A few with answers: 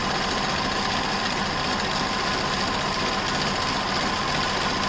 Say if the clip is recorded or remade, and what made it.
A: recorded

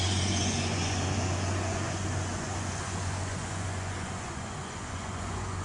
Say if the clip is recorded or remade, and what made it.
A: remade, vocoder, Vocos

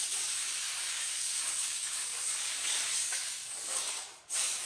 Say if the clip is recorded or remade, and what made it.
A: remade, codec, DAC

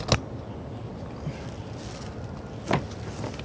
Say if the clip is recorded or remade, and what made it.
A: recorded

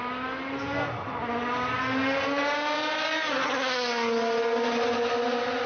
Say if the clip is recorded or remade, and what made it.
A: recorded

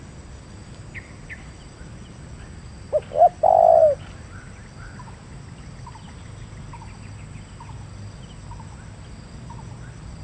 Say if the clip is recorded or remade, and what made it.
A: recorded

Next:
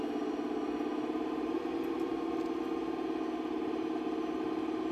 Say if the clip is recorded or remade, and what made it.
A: recorded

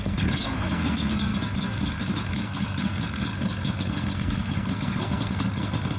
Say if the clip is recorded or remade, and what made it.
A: remade, codec, SNAC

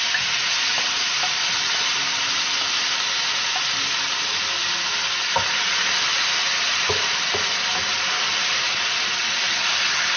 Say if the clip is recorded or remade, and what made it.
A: recorded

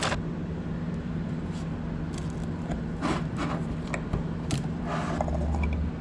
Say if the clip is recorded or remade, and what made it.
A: recorded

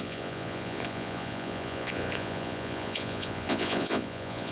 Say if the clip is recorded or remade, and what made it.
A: remade, vocoder, Vocos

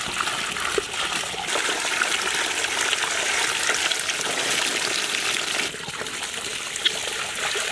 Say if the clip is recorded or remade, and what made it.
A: recorded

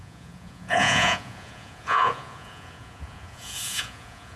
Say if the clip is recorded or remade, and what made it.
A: remade, vocoder, Vocos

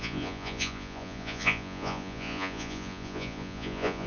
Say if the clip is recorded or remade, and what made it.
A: remade, vocoder, Vocos